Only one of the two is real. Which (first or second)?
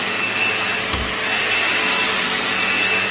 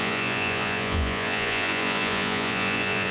first